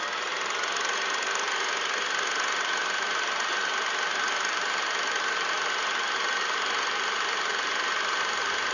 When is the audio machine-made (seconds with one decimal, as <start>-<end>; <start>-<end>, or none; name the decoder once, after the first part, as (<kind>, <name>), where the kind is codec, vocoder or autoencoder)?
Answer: none